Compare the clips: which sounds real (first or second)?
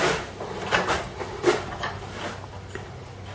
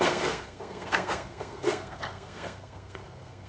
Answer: first